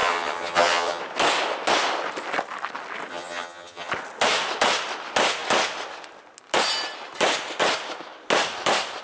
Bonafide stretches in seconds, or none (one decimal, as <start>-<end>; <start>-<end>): 1.0-3.1; 3.9-9.0